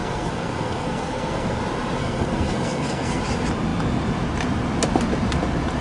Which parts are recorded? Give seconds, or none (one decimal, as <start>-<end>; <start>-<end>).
1.6-2.0; 3.2-5.8